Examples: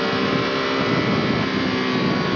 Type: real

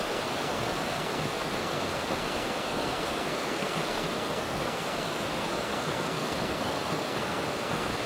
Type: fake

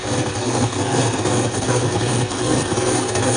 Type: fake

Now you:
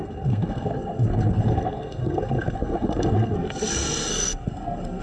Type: fake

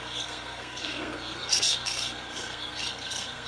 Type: fake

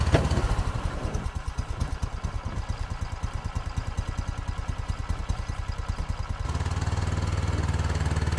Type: real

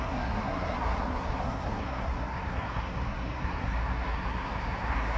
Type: fake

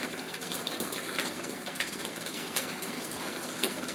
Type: fake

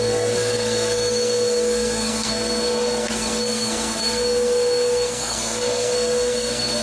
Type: fake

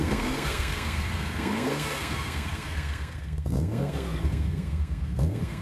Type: fake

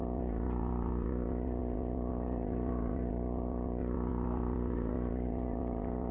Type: real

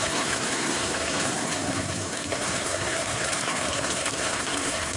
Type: fake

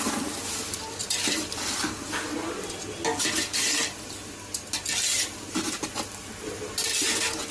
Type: real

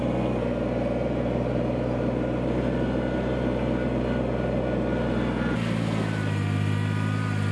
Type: real